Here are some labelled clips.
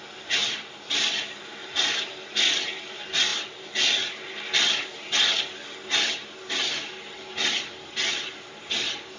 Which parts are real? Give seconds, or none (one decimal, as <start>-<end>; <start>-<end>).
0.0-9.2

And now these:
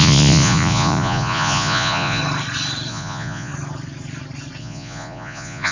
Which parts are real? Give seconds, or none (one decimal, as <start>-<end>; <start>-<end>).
2.2-2.9; 3.5-4.6

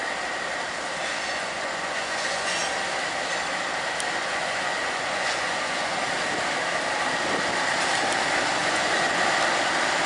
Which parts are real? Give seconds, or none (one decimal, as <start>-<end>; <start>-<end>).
0.0-1.1; 2.6-4.2; 6.0-8.6; 9.2-10.1

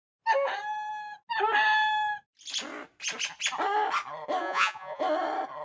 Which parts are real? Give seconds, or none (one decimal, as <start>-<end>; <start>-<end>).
0.0-4.4; 5.0-5.6

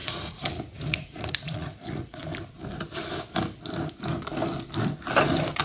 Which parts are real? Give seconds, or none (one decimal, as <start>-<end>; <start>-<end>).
2.2-5.6

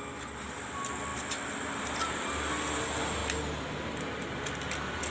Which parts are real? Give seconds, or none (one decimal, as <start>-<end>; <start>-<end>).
0.0-5.1

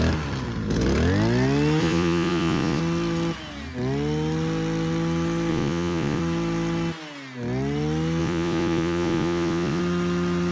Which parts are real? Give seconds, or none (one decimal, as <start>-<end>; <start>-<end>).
0.0-1.8; 2.8-5.5; 6.2-8.2; 9.8-10.5